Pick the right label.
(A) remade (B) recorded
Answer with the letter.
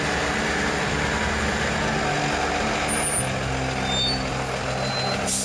B